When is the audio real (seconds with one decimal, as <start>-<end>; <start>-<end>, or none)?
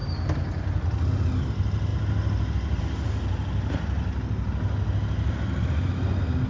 0.0-6.5